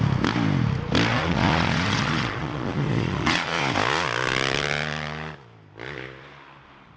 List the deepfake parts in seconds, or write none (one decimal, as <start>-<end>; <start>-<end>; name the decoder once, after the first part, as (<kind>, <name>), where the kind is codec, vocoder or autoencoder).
1.1-3.6 (vocoder, Vocos)